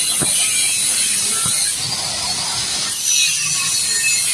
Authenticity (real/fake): real